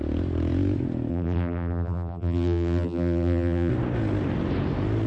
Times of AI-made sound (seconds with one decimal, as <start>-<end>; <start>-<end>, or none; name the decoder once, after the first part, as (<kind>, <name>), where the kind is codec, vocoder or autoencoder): 1.1-3.7 (vocoder, BigVGAN v2)